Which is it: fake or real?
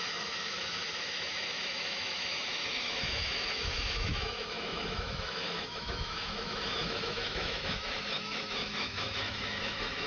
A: fake